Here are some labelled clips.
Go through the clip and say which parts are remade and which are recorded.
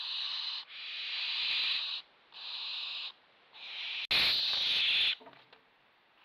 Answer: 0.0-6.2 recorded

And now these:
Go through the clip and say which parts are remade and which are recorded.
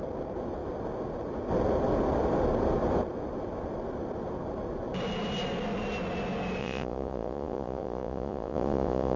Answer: 0.0-6.6 recorded; 6.6-9.2 remade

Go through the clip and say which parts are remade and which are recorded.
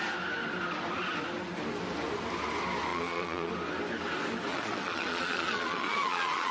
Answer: 0.0-2.9 recorded; 2.9-3.5 remade; 3.5-4.5 recorded; 4.5-6.5 remade